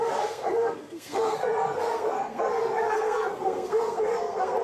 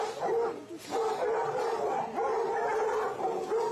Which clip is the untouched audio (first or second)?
second